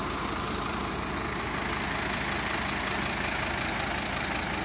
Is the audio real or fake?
real